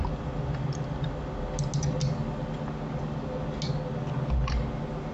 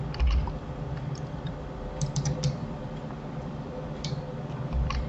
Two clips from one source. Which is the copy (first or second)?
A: second